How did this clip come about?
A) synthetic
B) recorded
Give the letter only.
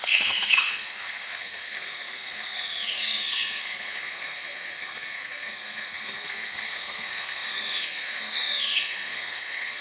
A